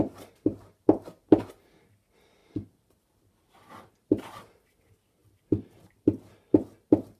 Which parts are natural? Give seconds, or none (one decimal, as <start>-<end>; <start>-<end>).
0.0-2.4; 3.9-5.2; 5.9-7.2